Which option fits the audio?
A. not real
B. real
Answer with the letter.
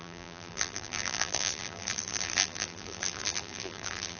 A